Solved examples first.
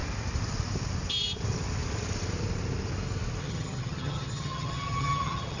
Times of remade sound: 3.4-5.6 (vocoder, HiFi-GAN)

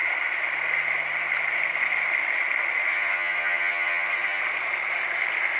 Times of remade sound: 2.9-4.4 (vocoder, HiFi-GAN)

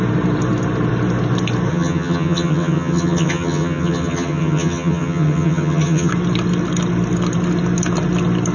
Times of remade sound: 1.7-6.1 (vocoder, HiFi-GAN)

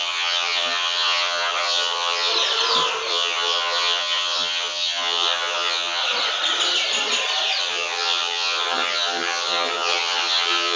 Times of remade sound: 0.0-2.3 (vocoder, HiFi-GAN); 3.1-6.0; 7.6-10.8